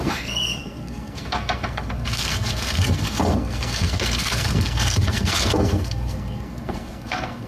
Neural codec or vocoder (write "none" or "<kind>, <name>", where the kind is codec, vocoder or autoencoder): codec, SNAC